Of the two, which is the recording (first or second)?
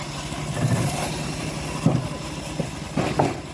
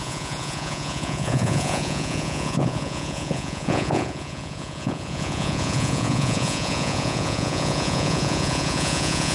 first